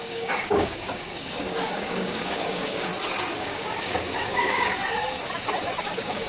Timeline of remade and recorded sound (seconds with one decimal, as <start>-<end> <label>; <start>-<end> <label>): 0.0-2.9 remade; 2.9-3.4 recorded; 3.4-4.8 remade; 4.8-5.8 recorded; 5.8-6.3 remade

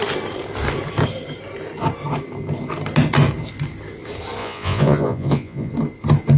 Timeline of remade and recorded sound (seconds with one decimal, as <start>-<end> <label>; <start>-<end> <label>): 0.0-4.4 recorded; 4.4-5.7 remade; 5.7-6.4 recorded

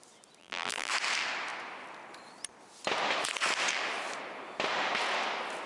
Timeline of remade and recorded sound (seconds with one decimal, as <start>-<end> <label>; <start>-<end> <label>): 0.0-0.4 recorded; 0.4-0.9 remade; 0.9-5.7 recorded

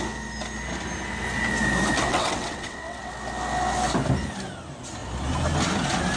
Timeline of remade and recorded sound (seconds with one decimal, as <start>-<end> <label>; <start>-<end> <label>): 0.0-2.1 recorded; 2.1-3.1 remade; 3.1-6.2 recorded

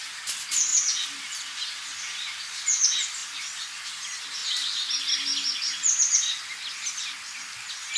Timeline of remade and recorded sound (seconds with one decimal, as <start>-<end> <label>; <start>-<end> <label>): 0.0-8.0 recorded

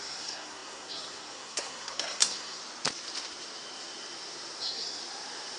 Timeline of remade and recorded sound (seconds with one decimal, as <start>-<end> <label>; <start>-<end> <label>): 0.0-2.6 remade; 2.6-4.6 recorded; 4.6-5.0 remade; 5.0-5.6 recorded

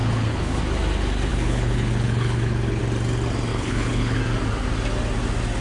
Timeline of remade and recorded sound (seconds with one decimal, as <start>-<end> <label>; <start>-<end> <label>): 0.0-0.6 remade; 0.6-1.3 recorded; 1.3-2.8 remade; 2.8-3.5 recorded; 3.5-4.2 remade; 4.2-5.6 recorded